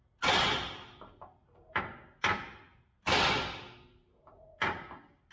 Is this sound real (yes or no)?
yes